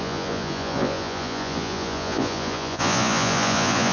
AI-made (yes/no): yes